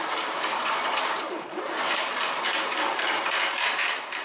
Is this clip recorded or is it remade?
remade